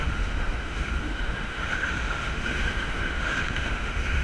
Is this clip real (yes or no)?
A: no